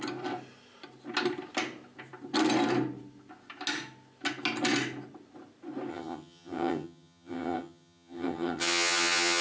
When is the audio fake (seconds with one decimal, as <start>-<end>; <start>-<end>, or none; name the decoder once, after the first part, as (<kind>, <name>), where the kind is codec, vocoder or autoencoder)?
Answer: 5.9-9.4 (vocoder, HiFi-GAN)